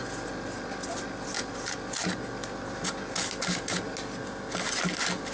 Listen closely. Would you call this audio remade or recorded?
recorded